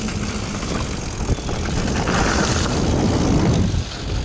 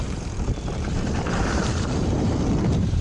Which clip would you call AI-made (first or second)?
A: second